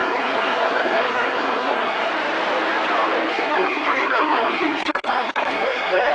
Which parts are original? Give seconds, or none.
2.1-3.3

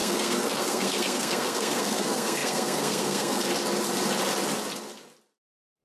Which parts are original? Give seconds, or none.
3.5-5.8

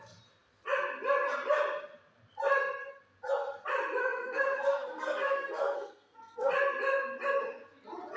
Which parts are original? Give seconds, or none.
0.0-4.0; 6.5-8.2

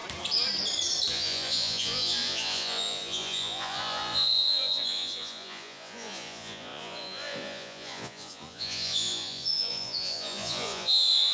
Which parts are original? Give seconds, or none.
0.0-1.1

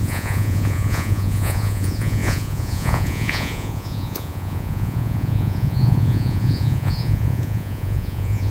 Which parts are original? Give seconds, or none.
none